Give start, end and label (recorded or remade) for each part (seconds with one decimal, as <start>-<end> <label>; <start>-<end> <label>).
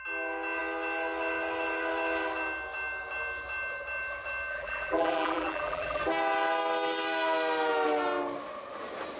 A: 0.0-4.5 recorded; 4.5-6.0 remade; 6.0-9.2 recorded